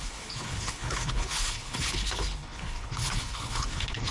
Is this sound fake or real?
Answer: fake